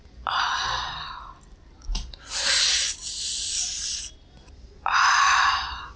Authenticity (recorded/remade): recorded